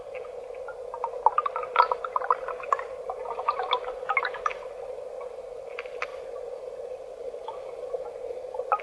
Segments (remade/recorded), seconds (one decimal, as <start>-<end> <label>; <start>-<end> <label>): 0.0-8.8 recorded